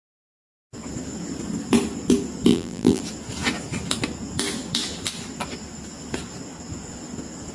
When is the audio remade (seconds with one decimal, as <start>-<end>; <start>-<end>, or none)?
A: 2.5-3.0